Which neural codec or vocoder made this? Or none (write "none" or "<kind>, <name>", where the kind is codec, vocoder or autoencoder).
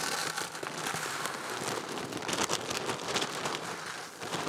none